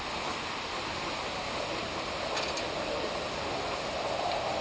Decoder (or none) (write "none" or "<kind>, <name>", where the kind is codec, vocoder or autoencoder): none